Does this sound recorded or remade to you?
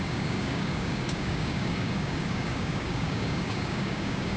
remade